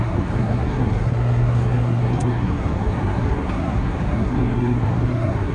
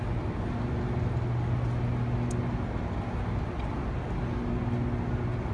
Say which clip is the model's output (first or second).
first